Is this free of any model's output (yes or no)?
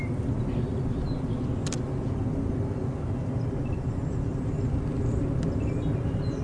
yes